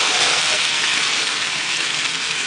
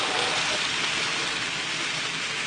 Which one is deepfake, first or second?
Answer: first